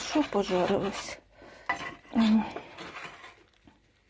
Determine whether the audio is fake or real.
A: real